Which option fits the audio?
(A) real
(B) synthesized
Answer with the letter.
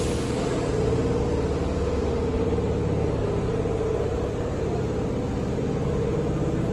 A